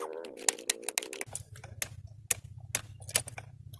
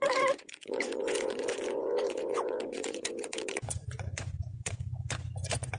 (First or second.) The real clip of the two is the first